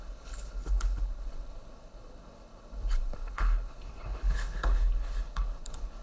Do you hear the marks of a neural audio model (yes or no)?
yes